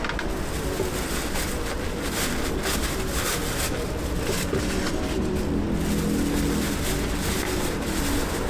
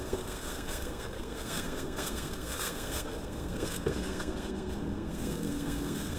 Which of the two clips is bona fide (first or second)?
first